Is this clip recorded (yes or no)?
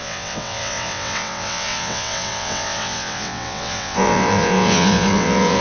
no